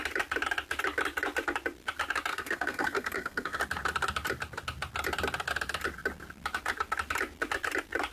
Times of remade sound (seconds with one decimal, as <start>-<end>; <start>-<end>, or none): 2.3-3.6